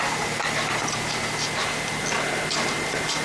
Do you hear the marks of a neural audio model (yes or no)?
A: no